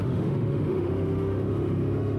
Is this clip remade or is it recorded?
remade